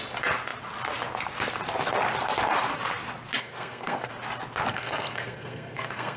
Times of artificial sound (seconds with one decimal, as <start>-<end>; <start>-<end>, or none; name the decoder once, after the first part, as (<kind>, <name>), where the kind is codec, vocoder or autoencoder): 3.4-4.1 (codec, SNAC); 4.7-6.2